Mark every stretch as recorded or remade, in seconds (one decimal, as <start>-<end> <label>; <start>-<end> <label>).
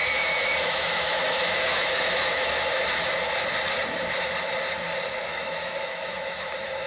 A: 0.0-2.8 remade; 2.8-5.3 recorded; 5.3-6.9 remade